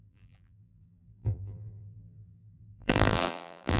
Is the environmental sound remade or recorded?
remade